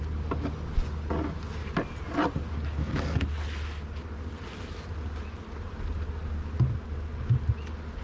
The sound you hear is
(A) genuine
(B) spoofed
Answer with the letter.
A